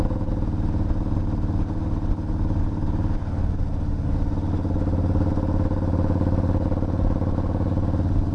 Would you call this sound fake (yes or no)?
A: no